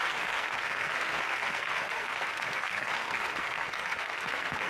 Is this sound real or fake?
fake